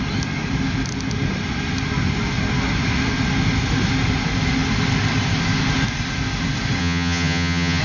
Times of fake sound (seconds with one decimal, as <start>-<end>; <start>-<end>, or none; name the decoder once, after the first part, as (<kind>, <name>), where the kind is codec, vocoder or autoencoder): 6.8-7.8 (vocoder, HiFi-GAN)